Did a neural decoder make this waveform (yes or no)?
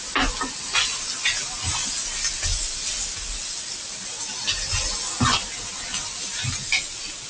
no